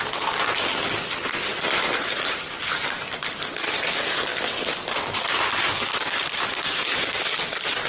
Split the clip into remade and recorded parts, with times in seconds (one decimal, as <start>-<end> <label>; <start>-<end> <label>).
0.0-1.5 recorded; 1.5-2.4 remade; 2.4-4.3 recorded; 4.3-7.9 remade